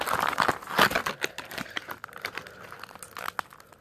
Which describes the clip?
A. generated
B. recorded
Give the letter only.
B